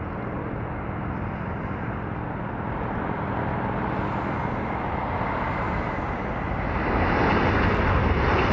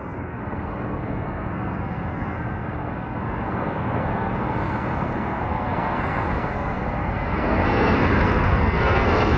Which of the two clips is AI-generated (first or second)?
second